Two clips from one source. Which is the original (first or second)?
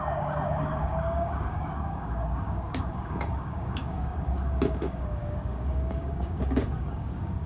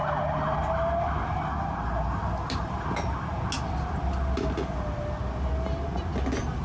second